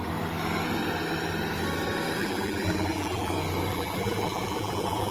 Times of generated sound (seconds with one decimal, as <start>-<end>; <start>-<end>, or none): 2.2-3.3; 3.7-5.1